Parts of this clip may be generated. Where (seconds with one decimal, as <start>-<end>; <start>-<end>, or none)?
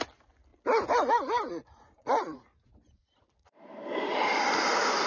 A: 1.6-3.6